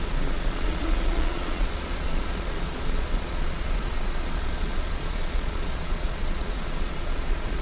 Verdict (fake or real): fake